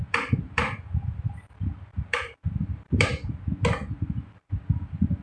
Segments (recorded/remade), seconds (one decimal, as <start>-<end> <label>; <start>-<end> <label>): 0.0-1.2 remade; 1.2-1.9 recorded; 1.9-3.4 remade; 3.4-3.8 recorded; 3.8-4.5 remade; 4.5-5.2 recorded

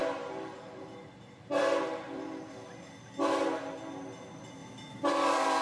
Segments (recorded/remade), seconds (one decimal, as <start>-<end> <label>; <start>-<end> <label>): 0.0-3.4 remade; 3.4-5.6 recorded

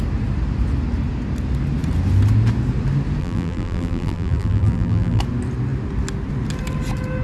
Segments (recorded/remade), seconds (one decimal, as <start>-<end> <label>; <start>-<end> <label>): 0.0-3.2 recorded; 3.2-5.2 remade; 5.2-7.2 recorded

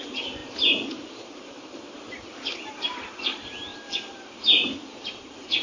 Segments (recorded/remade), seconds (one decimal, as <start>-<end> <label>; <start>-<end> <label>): 0.0-5.6 remade